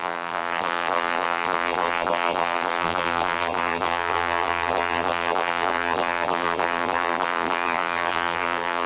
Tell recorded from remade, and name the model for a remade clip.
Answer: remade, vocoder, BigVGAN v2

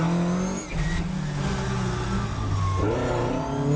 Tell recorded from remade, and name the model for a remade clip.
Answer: recorded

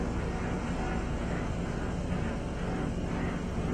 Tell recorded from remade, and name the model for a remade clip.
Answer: recorded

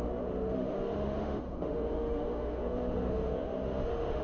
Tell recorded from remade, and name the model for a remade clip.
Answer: remade, autoencoder, DAC-VAE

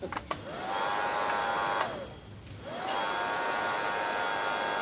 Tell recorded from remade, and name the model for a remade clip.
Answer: recorded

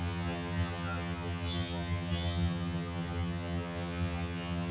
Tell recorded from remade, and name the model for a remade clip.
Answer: remade, vocoder, HiFi-GAN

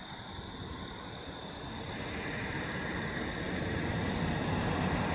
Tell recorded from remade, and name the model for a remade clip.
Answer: recorded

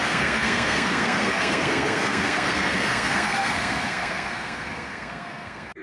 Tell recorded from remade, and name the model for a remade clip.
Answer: remade, codec, SNAC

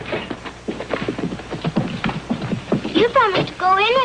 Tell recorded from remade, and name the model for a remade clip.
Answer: recorded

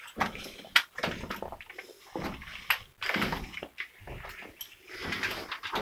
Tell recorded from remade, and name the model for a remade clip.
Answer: recorded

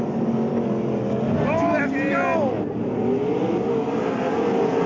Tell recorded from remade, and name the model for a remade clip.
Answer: recorded